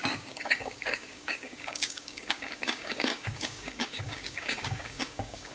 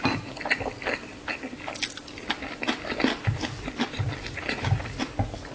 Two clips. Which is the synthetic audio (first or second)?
first